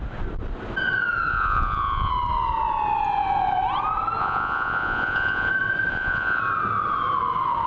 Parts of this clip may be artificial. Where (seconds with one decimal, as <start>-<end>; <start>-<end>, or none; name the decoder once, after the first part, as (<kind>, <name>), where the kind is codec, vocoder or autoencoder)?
1.3-2.1 (vocoder, Vocos); 4.2-5.5; 5.9-6.4